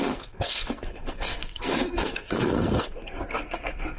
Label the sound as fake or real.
fake